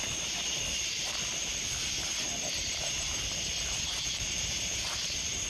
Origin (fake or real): real